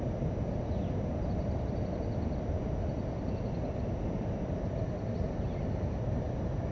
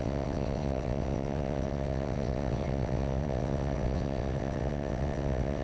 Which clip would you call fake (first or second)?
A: second